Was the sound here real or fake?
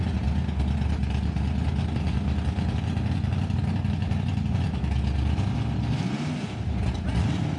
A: real